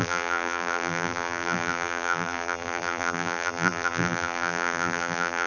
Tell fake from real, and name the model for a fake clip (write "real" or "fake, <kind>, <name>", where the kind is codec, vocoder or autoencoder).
fake, vocoder, BigVGAN v2